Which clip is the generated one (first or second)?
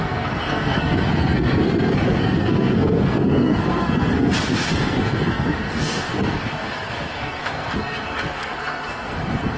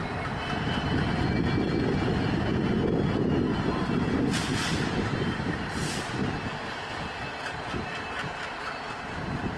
first